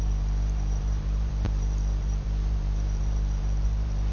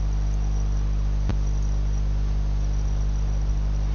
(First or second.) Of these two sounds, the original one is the second